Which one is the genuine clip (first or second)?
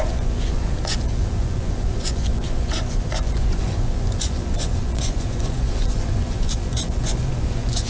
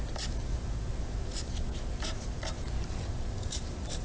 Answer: second